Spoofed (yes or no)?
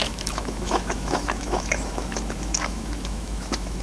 yes